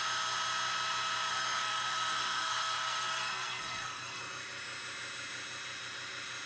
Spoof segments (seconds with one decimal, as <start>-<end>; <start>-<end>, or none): 1.3-4.2